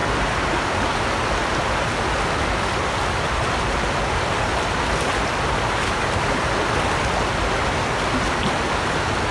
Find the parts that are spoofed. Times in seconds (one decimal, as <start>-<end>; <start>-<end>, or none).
none